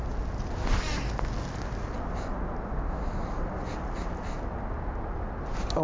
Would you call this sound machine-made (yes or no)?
no